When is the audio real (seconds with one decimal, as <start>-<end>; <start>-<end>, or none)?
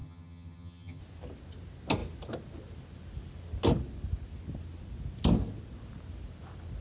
1.0-6.8